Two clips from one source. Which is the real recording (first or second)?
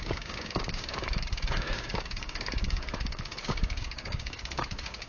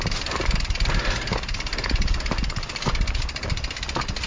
second